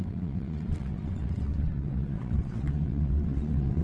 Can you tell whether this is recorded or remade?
remade